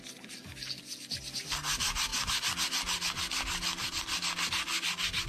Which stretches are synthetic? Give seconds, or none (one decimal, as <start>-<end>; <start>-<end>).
none